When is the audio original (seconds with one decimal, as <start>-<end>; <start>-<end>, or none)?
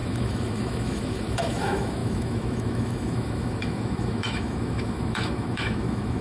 none